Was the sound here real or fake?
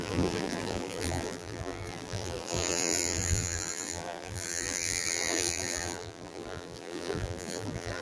fake